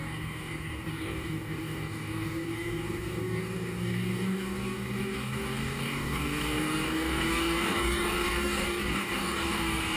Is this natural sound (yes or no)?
no